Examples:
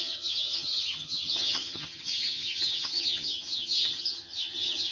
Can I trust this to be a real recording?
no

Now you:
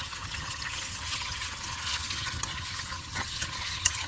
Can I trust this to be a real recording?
no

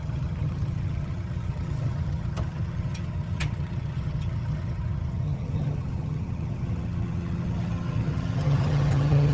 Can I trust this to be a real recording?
no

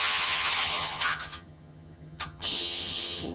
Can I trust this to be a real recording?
no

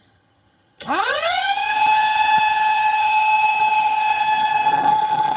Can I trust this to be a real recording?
no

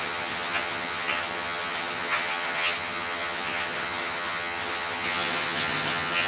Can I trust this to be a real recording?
no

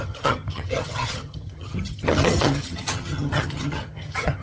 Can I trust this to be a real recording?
no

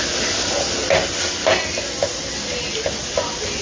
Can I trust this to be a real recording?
yes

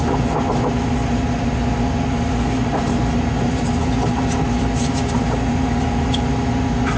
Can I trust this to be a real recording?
yes